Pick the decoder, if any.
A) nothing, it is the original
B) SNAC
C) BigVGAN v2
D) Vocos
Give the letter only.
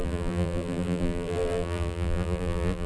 C